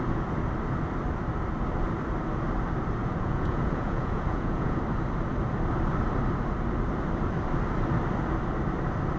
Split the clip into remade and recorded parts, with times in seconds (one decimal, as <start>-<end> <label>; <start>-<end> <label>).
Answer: 0.0-3.0 recorded; 3.0-4.8 remade; 4.8-9.2 recorded